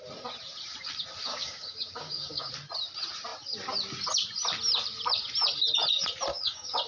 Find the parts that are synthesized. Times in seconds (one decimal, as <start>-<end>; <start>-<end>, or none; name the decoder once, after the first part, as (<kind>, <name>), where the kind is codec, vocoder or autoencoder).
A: 1.3-2.5 (codec, DAC); 6.3-6.9